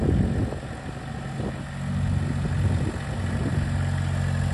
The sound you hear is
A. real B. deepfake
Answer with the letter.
A